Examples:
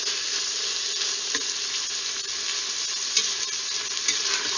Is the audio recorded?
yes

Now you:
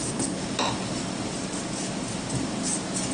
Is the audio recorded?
yes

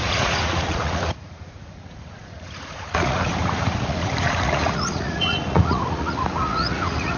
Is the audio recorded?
no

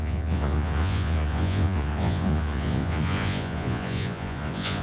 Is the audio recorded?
no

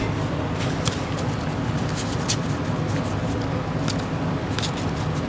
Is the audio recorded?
yes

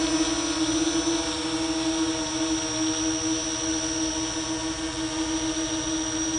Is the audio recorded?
yes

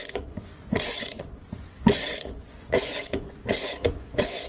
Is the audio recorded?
no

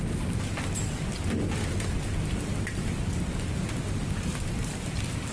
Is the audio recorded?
yes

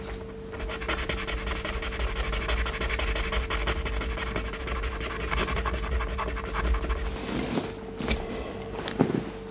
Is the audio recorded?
yes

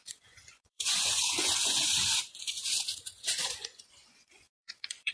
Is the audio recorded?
no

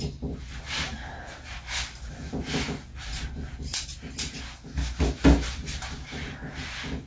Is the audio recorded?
yes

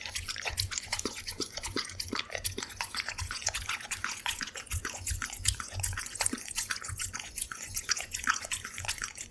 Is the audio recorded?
no